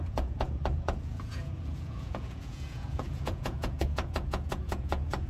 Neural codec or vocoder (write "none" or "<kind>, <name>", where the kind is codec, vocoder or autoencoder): vocoder, Vocos